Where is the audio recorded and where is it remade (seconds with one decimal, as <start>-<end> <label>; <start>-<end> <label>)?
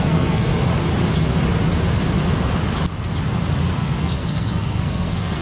0.0-0.5 remade; 0.5-3.7 recorded; 3.7-5.4 remade